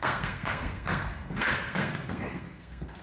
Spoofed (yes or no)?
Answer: yes